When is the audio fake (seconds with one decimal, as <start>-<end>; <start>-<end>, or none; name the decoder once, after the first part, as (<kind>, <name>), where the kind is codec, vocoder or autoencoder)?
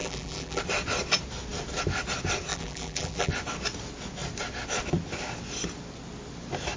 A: 0.0-0.6 (vocoder, BigVGAN v2); 2.5-3.3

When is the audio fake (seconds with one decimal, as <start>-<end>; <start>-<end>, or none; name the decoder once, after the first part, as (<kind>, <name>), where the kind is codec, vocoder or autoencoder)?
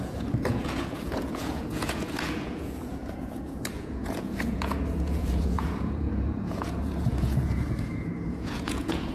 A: 0.0-9.1 (vocoder, Vocos)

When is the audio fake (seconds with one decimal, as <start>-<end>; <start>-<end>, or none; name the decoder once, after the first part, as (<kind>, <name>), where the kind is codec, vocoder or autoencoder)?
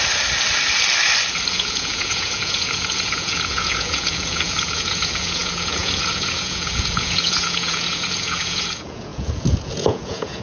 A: 1.5-10.4 (vocoder, Vocos)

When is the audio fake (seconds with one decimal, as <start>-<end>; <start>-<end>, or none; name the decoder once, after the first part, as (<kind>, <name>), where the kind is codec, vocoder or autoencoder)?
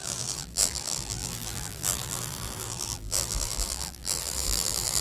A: 0.0-5.0 (vocoder, BigVGAN v2)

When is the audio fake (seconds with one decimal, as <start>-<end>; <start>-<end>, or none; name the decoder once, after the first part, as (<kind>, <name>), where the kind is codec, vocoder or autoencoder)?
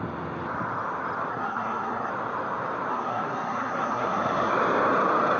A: 1.3-2.1 (codec, SNAC); 2.9-4.5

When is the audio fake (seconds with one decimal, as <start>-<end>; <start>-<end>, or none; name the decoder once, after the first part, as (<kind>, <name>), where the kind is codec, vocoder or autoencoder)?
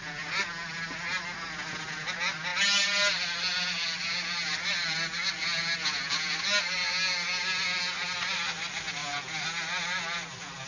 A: none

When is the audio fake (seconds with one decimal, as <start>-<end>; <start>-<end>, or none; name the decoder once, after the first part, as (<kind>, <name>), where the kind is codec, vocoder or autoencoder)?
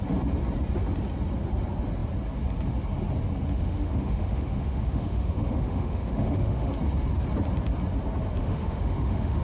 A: 3.5-6.7 (autoencoder, DAC-VAE); 8.4-9.4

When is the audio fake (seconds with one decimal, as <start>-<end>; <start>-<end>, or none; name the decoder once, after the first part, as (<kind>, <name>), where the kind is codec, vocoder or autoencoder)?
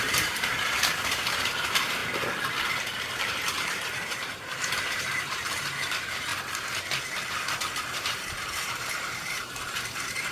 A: 0.0-2.0 (vocoder, BigVGAN v2); 3.2-6.3; 7.9-10.3